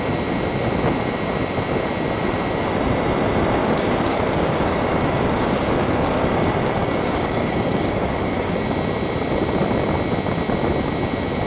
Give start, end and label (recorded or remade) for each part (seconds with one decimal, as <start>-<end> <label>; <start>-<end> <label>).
0.0-3.6 recorded; 3.6-8.6 remade; 8.6-11.5 recorded